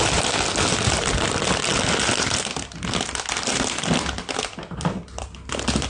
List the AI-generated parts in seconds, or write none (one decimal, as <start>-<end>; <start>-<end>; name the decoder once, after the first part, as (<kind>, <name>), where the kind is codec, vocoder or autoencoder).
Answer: none